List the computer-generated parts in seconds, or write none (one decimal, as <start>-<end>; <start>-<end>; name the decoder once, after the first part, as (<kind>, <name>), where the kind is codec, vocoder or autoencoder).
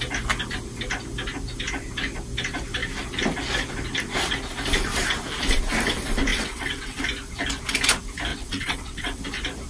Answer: 6.3-7.0 (vocoder, WaveNeXt); 8.3-9.2